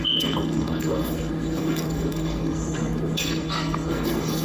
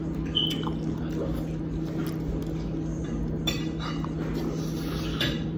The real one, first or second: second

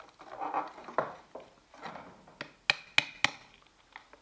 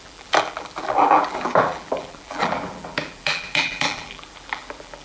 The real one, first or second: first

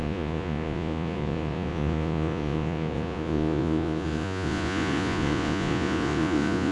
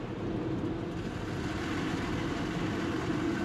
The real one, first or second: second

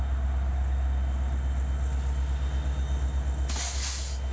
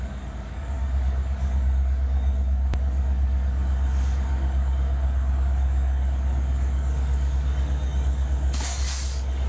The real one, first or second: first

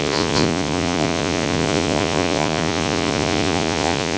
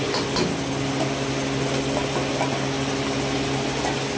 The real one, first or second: second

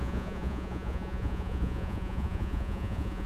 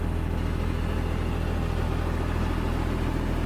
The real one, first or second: second